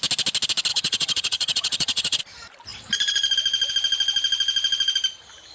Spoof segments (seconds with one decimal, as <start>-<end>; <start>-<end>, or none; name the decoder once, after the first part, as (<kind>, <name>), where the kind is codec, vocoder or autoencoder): 0.7-2.2 (vocoder, HiFi-GAN)